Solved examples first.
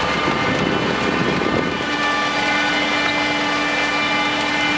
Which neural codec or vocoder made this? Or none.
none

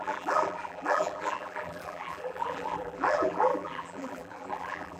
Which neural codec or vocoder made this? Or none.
vocoder, BigVGAN v2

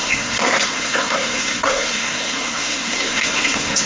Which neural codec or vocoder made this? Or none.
codec, SNAC